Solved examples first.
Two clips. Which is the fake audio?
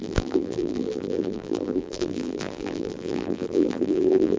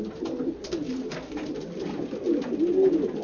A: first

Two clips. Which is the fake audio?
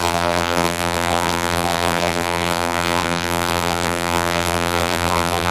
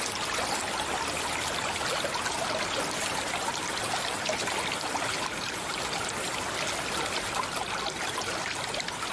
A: first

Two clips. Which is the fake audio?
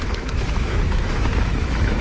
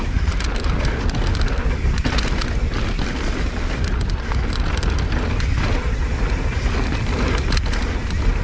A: first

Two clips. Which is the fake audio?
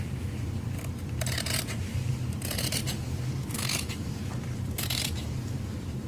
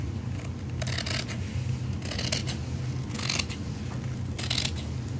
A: first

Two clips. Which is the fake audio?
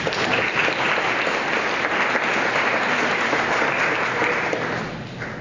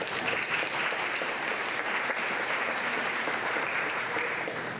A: second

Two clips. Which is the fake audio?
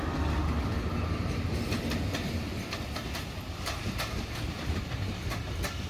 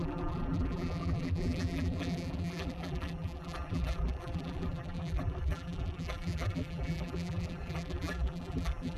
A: second